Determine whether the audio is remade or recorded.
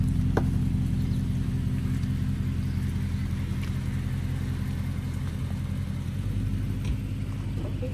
recorded